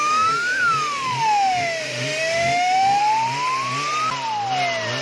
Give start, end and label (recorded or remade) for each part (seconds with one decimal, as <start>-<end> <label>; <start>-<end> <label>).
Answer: 0.0-3.0 remade; 3.0-5.0 recorded